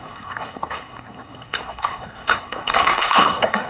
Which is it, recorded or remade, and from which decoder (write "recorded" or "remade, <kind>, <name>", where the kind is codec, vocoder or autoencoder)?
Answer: remade, codec, SNAC